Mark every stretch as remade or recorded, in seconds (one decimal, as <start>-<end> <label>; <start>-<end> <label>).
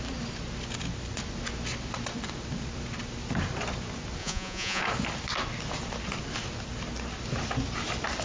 0.0-4.2 recorded; 4.2-4.8 remade; 4.8-8.2 recorded